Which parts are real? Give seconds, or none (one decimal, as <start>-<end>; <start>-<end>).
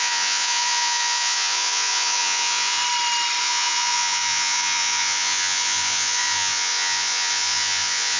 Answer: 2.8-3.4